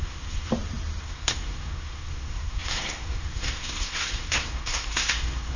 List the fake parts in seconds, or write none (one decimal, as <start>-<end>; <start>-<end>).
0.0-0.5; 1.0-5.6

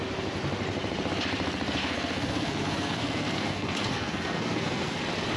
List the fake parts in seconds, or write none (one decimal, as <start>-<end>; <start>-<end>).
1.8-5.0

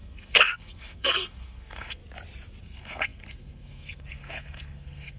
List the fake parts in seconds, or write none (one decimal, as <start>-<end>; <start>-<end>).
0.0-2.0; 2.6-5.2

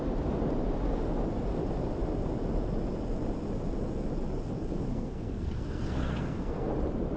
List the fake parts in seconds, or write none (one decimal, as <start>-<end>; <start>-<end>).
4.9-6.7

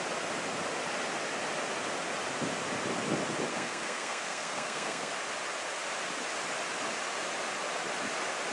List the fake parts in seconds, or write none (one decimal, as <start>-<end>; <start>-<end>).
3.5-5.1

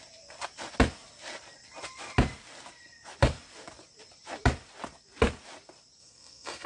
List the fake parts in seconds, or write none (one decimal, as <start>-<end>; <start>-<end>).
6.0-6.7

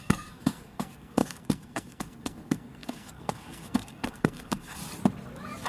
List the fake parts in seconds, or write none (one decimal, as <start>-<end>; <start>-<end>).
0.0-4.8

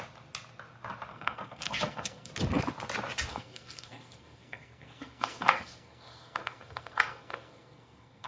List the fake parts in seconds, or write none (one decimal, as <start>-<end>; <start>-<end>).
1.1-2.3; 3.3-8.3